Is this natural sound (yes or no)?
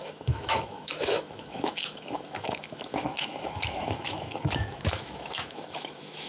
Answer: no